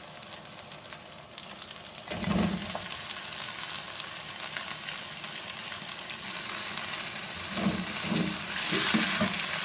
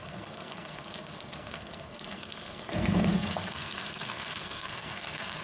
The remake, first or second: second